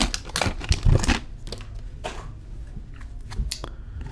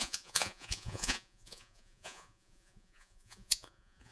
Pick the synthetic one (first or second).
second